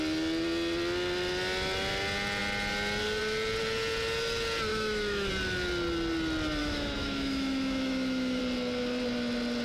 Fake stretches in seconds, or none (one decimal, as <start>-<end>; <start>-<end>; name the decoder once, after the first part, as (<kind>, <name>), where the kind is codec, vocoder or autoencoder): 4.7-5.3 (autoencoder, DAC-VAE); 6.6-8.4